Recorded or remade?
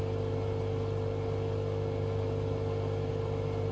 recorded